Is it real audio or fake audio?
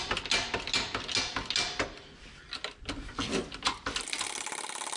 real